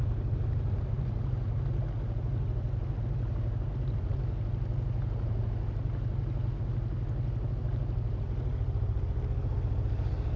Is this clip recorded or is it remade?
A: recorded